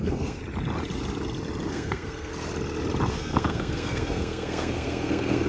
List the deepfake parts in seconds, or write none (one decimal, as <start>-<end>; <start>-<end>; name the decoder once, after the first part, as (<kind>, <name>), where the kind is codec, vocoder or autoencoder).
0.0-0.4 (codec, SNAC); 1.7-2.3; 3.1-5.5